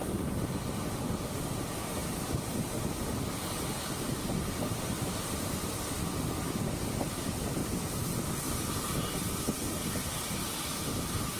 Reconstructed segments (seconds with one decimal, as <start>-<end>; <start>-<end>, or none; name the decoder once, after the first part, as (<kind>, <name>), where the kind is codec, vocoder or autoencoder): 0.0-7.6 (vocoder, BigVGAN v2); 10.3-11.4